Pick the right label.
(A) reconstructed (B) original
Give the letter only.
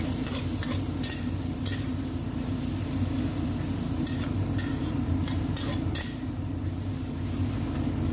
B